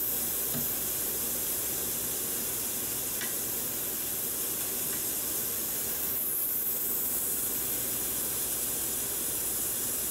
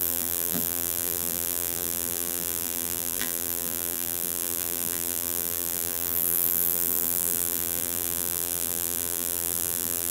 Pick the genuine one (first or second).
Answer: first